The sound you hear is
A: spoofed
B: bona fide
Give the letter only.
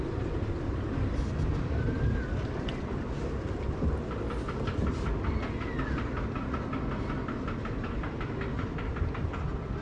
B